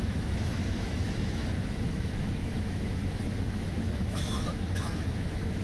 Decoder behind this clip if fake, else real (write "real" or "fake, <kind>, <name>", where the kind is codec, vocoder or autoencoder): fake, autoencoder, DAC-VAE